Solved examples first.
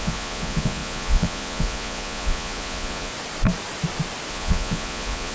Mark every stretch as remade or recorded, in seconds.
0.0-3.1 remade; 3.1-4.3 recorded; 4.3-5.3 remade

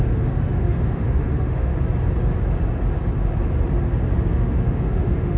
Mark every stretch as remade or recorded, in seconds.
0.0-1.7 remade; 1.7-4.3 recorded; 4.3-5.4 remade

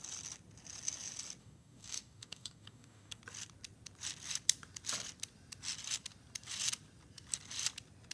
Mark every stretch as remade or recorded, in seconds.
0.0-1.4 recorded; 1.4-3.2 remade; 3.2-8.1 recorded

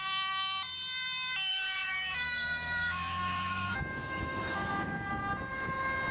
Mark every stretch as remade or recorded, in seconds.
0.0-1.5 recorded; 1.5-5.1 remade; 5.1-6.1 recorded